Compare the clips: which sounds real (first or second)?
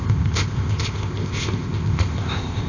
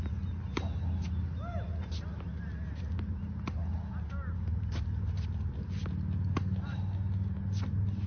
second